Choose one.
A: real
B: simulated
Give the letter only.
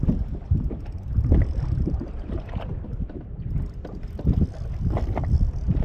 A